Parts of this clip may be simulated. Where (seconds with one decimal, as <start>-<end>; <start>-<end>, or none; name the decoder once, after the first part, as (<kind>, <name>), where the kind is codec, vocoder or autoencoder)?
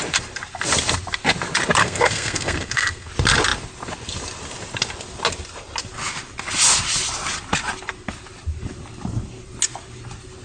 1.8-3.1 (codec, SNAC)